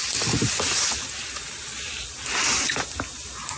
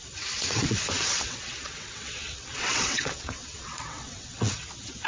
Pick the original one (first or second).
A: first